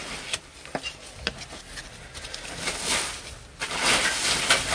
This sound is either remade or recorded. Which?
recorded